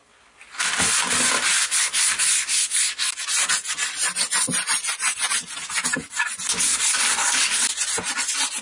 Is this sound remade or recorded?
recorded